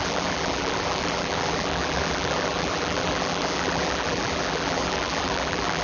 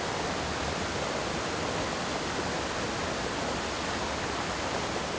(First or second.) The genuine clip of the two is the second